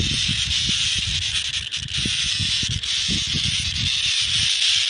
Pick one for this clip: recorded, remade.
recorded